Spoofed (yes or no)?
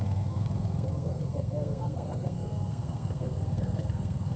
yes